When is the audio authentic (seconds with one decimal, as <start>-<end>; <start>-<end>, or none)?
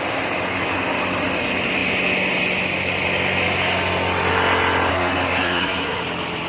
0.0-4.9; 6.0-6.5